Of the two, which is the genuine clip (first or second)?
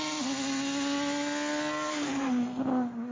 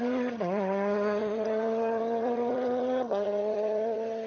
first